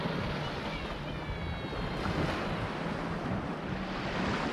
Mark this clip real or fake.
real